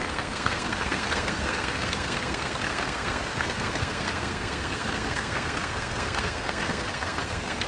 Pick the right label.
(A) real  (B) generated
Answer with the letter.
B